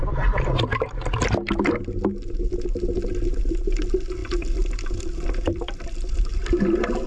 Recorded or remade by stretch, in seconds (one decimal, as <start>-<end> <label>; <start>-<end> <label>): 0.0-4.2 recorded; 4.2-6.6 remade; 6.6-7.1 recorded